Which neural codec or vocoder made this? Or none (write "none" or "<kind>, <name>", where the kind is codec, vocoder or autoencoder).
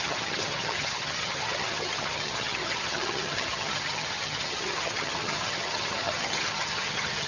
vocoder, HiFi-GAN